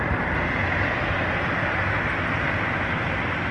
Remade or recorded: recorded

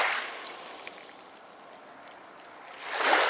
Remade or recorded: recorded